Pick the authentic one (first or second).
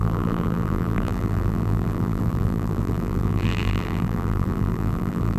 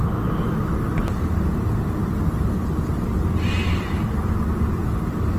second